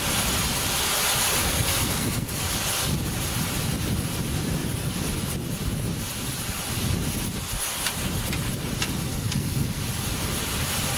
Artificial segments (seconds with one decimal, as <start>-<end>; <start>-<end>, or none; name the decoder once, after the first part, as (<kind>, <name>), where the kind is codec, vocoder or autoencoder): 1.4-2.4 (codec, SNAC); 9.1-9.8

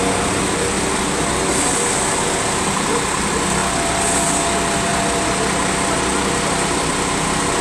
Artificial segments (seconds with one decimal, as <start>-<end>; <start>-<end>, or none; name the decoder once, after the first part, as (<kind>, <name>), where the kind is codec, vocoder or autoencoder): none